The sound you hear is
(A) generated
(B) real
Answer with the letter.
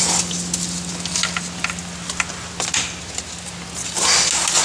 B